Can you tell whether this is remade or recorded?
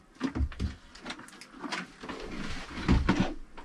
recorded